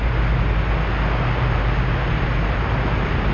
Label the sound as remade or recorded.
recorded